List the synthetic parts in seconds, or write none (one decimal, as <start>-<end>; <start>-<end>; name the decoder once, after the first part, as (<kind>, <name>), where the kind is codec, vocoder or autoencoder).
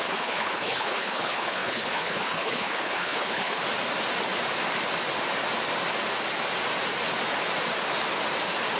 0.0-3.6 (codec, HILCodec)